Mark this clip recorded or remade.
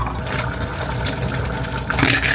recorded